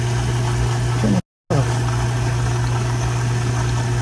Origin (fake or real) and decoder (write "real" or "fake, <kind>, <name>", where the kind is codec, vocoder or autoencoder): real